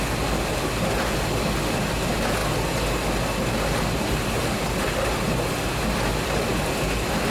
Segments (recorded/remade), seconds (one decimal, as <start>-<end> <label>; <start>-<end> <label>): 0.0-7.3 recorded